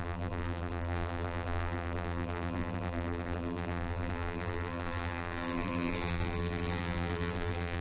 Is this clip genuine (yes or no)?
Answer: no